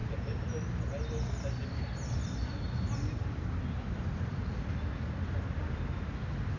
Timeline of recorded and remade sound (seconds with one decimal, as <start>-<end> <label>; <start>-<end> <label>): 0.0-6.6 recorded